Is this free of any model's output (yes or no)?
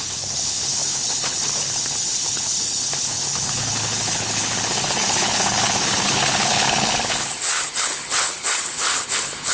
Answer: no